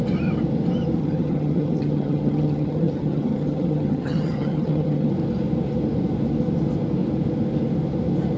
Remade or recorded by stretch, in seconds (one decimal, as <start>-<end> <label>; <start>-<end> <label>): 0.0-1.0 recorded; 1.0-5.1 remade; 5.1-8.4 recorded